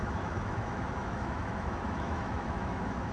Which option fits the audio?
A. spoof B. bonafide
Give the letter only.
A